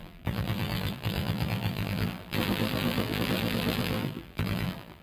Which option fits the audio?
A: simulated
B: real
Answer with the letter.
A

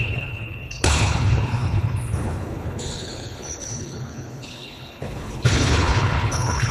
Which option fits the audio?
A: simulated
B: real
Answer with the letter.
A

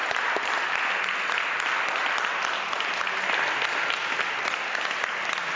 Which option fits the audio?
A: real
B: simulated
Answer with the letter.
A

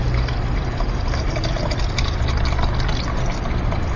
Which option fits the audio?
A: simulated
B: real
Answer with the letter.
B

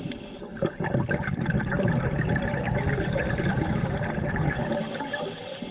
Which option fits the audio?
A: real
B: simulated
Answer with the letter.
A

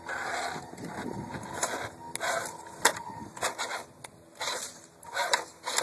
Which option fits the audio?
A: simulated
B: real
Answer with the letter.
B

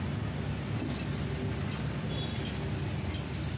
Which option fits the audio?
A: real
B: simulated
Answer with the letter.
A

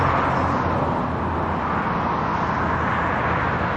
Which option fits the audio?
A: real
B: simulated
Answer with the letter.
A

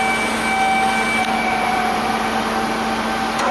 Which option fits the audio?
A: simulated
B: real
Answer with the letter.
B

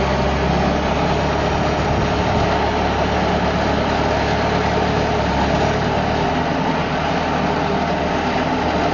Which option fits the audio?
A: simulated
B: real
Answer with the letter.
B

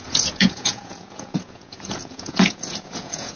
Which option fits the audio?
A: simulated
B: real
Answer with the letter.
A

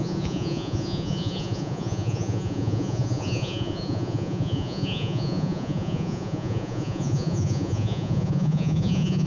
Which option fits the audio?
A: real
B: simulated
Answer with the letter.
B